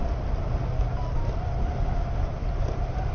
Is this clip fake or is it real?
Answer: real